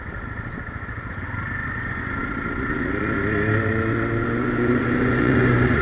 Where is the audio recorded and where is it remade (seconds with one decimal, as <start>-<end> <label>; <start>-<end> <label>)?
0.0-1.6 recorded; 1.6-2.2 remade; 2.2-4.2 recorded; 4.2-5.8 remade